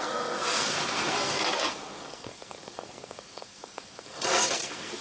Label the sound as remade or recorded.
remade